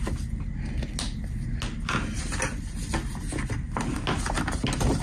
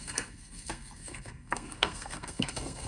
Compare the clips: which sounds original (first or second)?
first